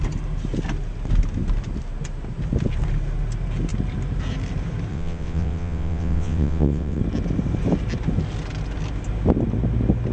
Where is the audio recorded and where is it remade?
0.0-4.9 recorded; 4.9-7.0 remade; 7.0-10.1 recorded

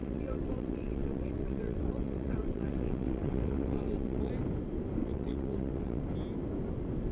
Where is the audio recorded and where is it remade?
0.0-4.3 remade; 4.3-5.0 recorded; 5.0-6.0 remade; 6.0-7.1 recorded

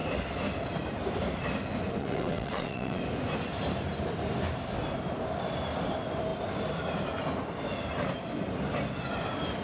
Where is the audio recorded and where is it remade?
0.0-2.0 recorded; 2.0-3.0 remade; 3.0-9.6 recorded

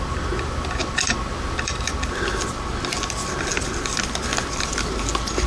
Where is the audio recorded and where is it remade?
0.0-5.5 recorded

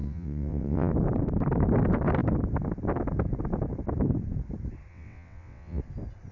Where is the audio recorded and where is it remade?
0.0-0.9 remade; 0.9-4.9 recorded; 4.9-5.8 remade; 5.8-6.3 recorded

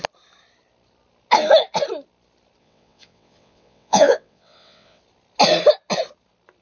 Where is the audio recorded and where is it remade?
0.0-2.6 recorded; 2.6-5.0 remade; 5.0-6.6 recorded

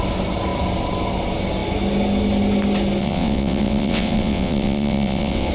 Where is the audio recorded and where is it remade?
0.0-3.0 recorded; 3.0-5.5 remade

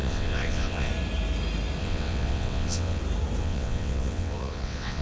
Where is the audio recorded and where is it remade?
0.0-0.9 remade; 0.9-1.8 recorded; 1.8-3.0 remade; 3.0-3.4 recorded; 3.4-5.0 remade